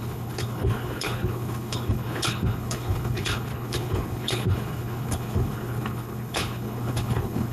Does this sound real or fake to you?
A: fake